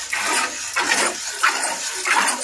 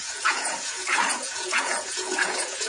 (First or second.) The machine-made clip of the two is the second